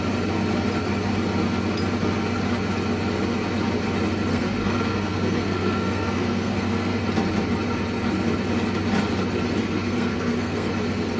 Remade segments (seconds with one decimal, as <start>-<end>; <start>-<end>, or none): 4.3-7.0; 9.6-10.7